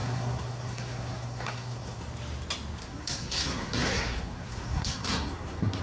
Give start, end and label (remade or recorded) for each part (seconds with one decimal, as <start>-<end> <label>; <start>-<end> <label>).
0.0-2.0 remade; 2.0-2.8 recorded; 2.8-5.8 remade